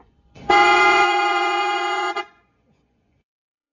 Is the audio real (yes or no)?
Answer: no